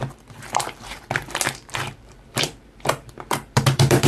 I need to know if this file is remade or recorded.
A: remade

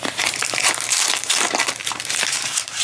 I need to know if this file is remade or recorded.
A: remade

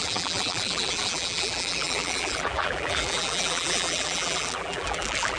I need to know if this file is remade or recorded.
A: remade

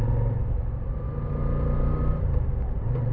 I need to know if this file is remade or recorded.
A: recorded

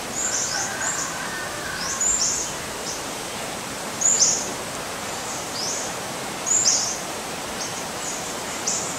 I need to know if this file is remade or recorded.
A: remade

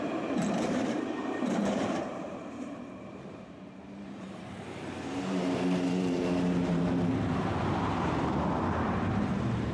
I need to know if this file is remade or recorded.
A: remade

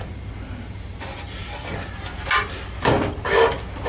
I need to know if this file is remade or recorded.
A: recorded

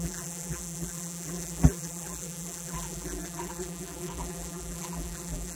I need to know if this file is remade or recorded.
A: remade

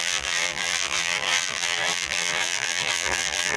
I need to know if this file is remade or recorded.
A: remade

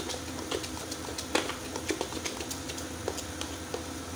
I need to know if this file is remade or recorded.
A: recorded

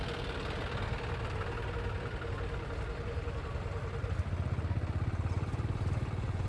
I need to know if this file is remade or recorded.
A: recorded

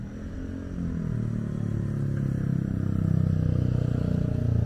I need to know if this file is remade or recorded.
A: recorded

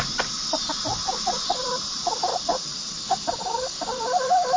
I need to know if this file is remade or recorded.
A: remade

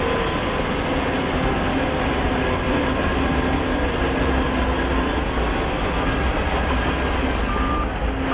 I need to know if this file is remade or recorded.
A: recorded